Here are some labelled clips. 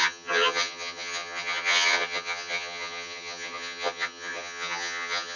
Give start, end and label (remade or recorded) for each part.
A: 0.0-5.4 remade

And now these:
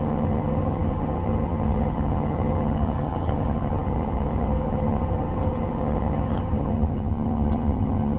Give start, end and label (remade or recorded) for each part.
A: 0.0-8.2 remade

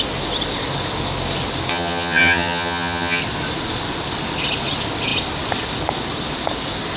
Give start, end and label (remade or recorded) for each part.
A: 0.0-1.7 recorded; 1.7-3.2 remade; 3.2-7.0 recorded

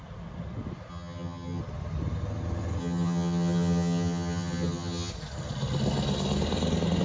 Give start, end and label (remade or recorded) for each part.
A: 0.0-0.9 recorded; 0.9-1.6 remade; 1.6-2.8 recorded; 2.8-5.1 remade; 5.1-7.0 recorded

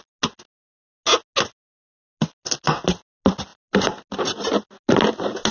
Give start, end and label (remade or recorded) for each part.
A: 0.0-5.5 recorded

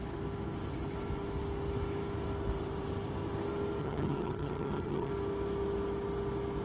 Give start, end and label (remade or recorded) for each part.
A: 0.0-3.8 recorded; 3.8-5.1 remade; 5.1-6.6 recorded